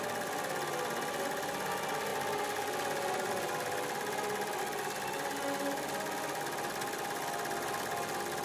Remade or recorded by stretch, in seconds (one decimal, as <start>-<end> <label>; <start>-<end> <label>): 0.0-2.1 recorded; 2.1-4.6 remade; 4.6-8.4 recorded